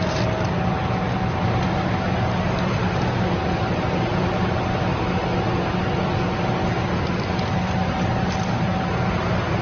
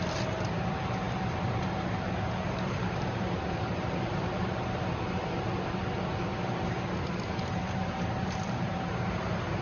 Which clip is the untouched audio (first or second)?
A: first